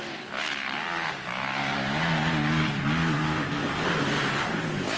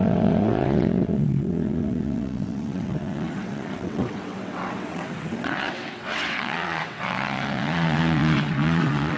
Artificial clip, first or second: second